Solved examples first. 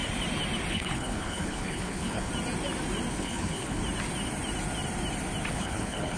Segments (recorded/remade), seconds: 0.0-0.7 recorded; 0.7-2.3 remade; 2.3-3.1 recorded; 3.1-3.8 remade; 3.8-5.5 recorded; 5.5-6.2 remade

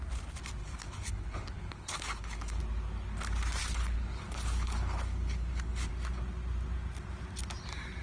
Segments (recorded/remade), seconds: 0.0-0.6 recorded; 0.6-2.6 remade; 2.6-3.6 recorded; 3.6-5.9 remade; 5.9-8.0 recorded

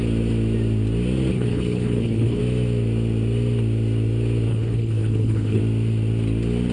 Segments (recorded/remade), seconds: 0.0-1.3 recorded; 1.3-2.4 remade; 2.4-4.5 recorded; 4.5-5.6 remade; 5.6-6.7 recorded

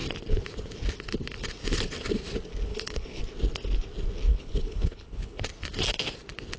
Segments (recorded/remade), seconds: 0.0-2.7 recorded; 2.7-3.2 remade; 3.2-4.3 recorded; 4.3-5.4 remade; 5.4-6.6 recorded

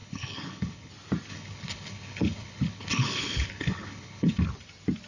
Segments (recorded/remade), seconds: 0.0-0.9 remade; 0.9-1.3 recorded; 1.3-4.4 remade; 4.4-5.1 recorded